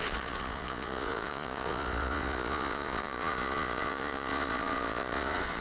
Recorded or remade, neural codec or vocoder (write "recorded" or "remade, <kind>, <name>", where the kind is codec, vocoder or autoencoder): remade, vocoder, Vocos